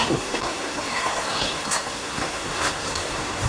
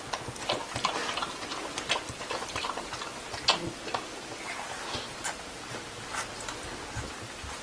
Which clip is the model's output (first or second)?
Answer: first